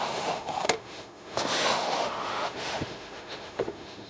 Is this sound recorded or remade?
remade